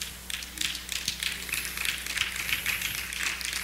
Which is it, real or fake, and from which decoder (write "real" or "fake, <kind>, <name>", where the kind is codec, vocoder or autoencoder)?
real